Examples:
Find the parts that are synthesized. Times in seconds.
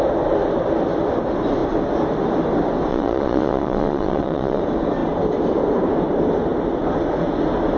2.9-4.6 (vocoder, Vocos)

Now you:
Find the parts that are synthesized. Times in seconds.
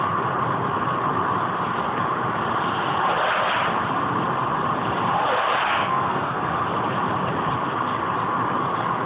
5.7-6.5 (codec, SNAC)